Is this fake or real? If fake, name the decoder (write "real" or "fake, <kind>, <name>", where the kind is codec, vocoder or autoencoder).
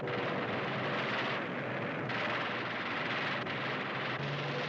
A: real